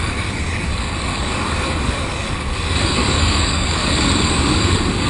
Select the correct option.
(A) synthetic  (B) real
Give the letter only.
A